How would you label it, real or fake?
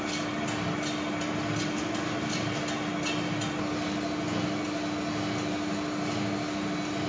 real